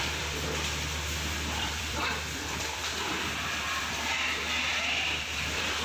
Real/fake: fake